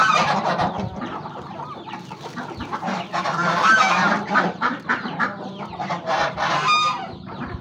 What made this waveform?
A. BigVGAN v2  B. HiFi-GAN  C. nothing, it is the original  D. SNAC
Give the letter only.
A